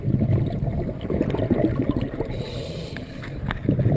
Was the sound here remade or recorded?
recorded